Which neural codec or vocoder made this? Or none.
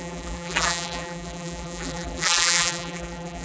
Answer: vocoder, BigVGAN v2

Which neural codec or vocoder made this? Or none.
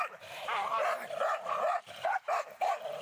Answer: vocoder, BigVGAN v2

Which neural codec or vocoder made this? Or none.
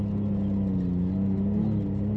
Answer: none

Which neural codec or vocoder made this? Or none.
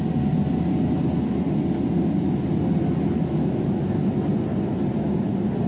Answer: none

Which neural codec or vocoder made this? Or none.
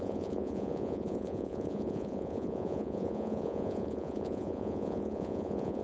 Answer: vocoder, Vocos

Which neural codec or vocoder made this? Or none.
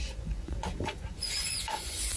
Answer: vocoder, Vocos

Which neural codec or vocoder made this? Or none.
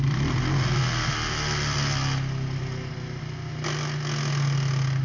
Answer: none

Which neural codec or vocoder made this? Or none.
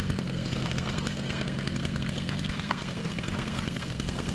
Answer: codec, SNAC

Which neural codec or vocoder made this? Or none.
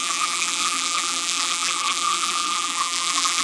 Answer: vocoder, BigVGAN v2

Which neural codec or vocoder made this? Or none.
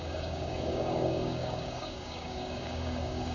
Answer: codec, DAC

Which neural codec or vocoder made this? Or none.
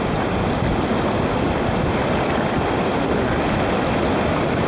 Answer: none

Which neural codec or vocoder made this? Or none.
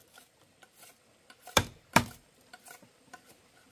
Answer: vocoder, BigVGAN v2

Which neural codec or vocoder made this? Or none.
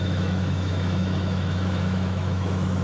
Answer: autoencoder, DAC-VAE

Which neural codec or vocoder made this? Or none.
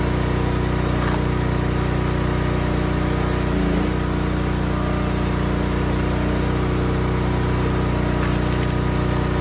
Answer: none